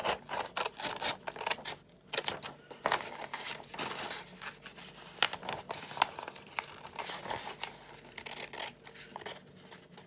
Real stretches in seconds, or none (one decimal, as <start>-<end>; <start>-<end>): 0.0-5.4; 7.1-10.1